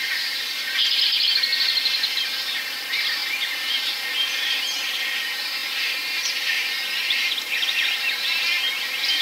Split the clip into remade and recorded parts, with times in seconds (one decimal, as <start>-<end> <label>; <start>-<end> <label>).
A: 0.0-9.2 recorded